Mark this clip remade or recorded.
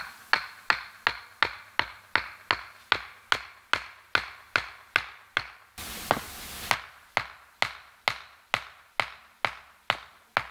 recorded